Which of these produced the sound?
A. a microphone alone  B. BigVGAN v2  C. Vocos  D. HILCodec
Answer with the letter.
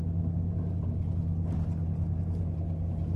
A